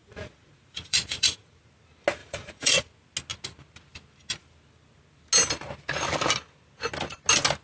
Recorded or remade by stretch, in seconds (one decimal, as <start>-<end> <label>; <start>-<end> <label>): 0.0-1.7 remade; 1.7-2.2 recorded; 2.2-2.8 remade; 2.8-7.6 recorded